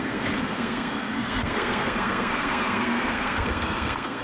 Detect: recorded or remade remade